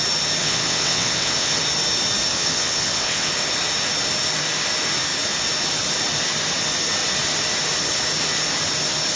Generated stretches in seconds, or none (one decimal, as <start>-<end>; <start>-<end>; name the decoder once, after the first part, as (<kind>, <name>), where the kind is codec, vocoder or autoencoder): 0.4-1.6 (vocoder, WaveNeXt); 2.3-3.3